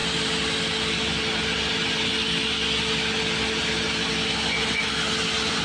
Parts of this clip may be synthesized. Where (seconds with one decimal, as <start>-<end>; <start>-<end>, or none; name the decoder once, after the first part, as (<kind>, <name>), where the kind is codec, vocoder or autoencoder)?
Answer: none